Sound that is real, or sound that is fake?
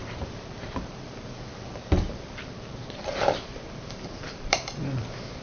fake